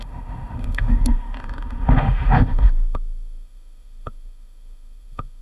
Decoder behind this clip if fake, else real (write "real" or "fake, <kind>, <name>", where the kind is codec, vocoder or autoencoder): fake, autoencoder, DAC-VAE